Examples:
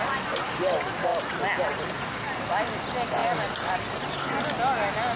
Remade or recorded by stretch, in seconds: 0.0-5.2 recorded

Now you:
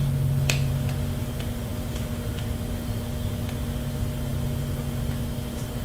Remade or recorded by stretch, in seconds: 0.0-5.8 recorded

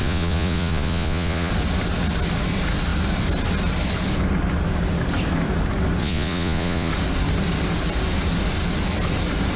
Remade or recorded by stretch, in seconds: 0.0-1.5 remade; 1.5-6.0 recorded; 6.0-6.9 remade; 6.9-9.6 recorded

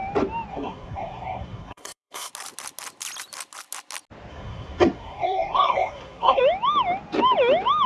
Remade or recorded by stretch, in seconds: 0.0-0.5 recorded; 0.5-2.3 remade; 2.3-4.3 recorded; 4.3-6.4 remade; 6.4-7.9 recorded